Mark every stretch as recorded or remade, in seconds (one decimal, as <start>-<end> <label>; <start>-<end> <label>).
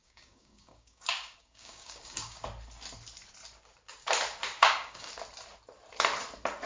0.0-2.4 remade; 2.4-4.6 recorded; 4.6-5.1 remade; 5.1-6.7 recorded